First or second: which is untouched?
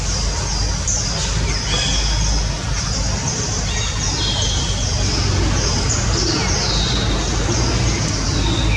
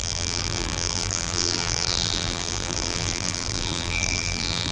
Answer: first